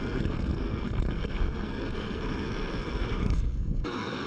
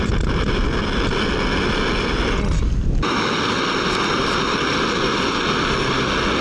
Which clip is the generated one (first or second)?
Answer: first